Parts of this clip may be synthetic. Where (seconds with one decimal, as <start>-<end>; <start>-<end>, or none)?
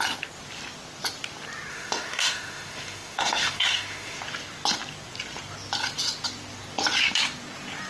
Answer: 1.7-4.2